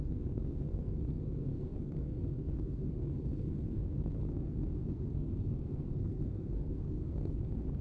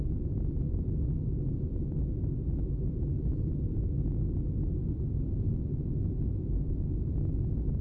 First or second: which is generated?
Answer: first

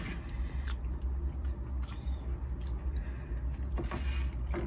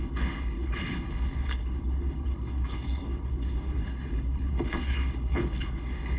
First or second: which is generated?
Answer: second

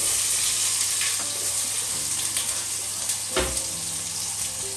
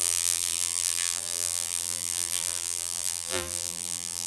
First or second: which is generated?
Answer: second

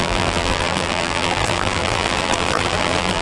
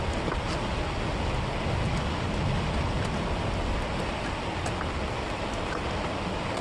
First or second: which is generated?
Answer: first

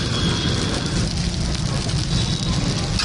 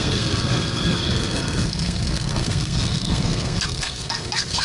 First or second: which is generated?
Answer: second